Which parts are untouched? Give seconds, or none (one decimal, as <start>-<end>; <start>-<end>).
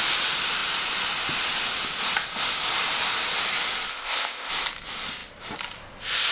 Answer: 0.0-3.9; 4.5-6.3